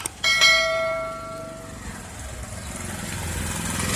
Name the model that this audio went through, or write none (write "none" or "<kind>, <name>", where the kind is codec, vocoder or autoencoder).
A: vocoder, BigVGAN v2